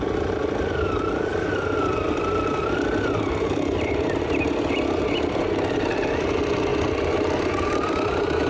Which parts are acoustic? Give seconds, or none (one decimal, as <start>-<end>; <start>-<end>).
0.0-1.3; 5.0-6.7; 7.9-8.5